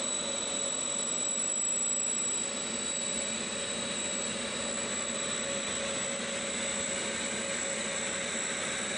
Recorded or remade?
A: recorded